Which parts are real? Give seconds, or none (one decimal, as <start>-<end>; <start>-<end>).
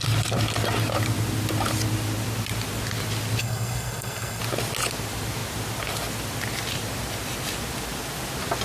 0.0-3.4; 4.4-8.6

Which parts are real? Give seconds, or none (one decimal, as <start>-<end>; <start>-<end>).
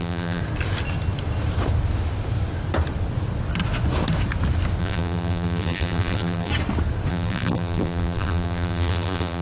0.4-4.8; 6.5-7.1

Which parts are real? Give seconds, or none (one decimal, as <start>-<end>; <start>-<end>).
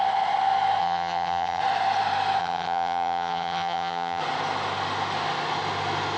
0.0-0.8; 1.6-2.4; 4.2-6.2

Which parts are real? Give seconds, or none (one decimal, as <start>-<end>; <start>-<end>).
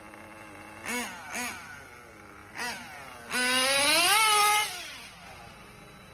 0.0-6.1